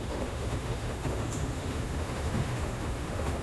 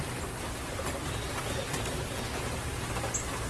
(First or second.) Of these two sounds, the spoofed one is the first